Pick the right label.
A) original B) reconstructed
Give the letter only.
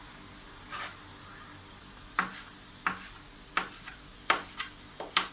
A